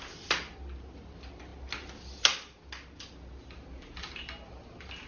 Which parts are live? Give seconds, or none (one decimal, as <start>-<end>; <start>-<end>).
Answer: 0.0-5.1